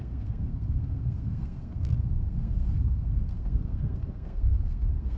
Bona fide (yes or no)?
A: no